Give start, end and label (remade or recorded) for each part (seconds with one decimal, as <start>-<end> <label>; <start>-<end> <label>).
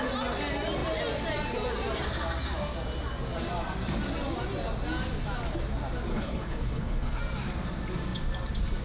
0.0-6.1 recorded; 6.1-7.2 remade; 7.2-8.8 recorded